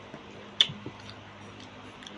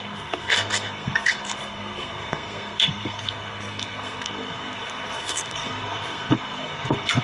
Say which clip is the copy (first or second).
second